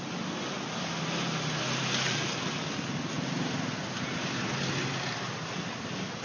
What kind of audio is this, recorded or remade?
recorded